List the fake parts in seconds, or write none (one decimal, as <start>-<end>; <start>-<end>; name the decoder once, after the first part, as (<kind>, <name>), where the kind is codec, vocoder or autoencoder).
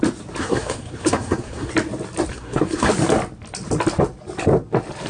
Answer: 0.4-1.7 (codec, SNAC); 2.3-2.9